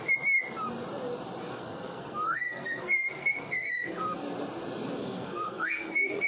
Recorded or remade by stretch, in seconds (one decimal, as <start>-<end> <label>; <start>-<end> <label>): 0.0-1.5 recorded; 1.5-4.2 remade; 4.2-5.0 recorded; 5.0-6.3 remade